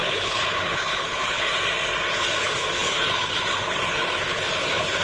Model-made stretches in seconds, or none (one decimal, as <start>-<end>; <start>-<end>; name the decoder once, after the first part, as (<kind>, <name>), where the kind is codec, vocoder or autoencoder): 0.0-1.5 (codec, HILCodec); 2.1-5.0